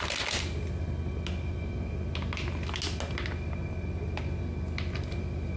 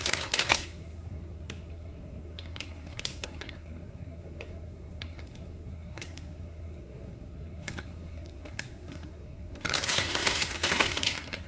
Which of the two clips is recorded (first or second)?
first